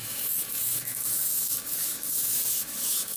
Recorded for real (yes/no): no